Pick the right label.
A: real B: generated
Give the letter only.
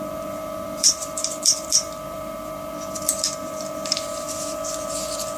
B